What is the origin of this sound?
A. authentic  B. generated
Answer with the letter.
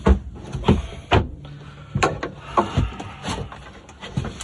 A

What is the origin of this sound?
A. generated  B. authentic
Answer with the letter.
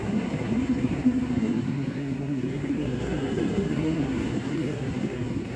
A